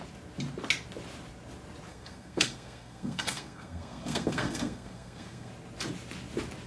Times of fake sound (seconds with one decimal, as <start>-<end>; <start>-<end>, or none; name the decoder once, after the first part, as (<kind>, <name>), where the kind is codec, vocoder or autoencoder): 1.9-5.5 (codec, SNAC)